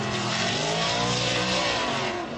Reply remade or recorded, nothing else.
recorded